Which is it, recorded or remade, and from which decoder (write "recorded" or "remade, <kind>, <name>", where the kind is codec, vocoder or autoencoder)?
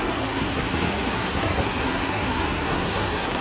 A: remade, codec, SNAC